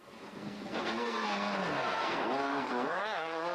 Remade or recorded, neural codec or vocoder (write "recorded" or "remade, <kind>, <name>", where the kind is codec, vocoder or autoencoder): remade, codec, SNAC